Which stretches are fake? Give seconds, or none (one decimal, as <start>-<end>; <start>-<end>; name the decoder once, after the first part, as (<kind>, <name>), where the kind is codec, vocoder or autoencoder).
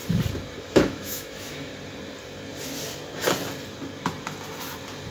0.6-1.7 (autoencoder, DAC-VAE)